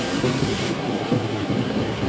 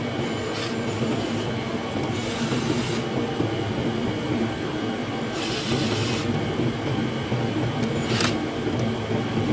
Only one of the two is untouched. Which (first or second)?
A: second